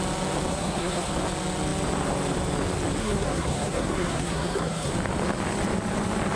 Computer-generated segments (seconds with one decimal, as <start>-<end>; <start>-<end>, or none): 0.5-1.1; 3.0-4.9